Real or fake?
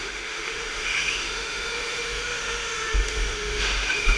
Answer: fake